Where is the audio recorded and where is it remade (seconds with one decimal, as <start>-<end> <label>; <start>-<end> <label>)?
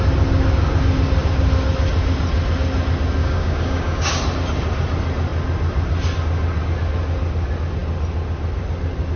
0.0-3.2 recorded; 3.2-4.2 remade; 4.2-9.2 recorded